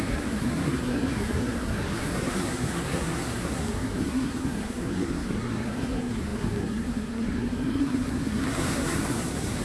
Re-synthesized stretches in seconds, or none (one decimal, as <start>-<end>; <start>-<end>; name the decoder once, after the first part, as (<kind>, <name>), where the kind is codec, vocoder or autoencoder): 0.0-9.6 (codec, SNAC)